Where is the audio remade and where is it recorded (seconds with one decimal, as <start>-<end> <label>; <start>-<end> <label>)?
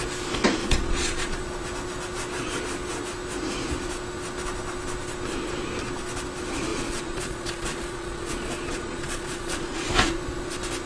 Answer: 0.0-0.6 recorded; 0.6-1.4 remade; 1.4-6.7 recorded; 6.7-9.9 remade; 9.9-10.9 recorded